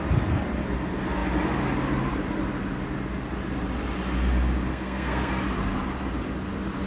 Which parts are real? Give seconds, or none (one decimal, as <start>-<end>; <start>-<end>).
0.0-4.7; 5.3-6.9